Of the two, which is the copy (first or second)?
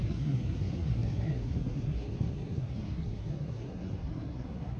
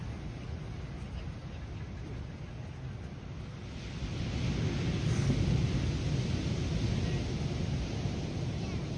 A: first